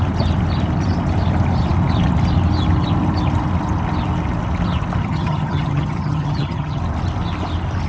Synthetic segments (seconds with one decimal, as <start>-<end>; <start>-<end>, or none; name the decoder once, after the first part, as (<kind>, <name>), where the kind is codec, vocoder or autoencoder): 5.0-6.8 (vocoder, HiFi-GAN)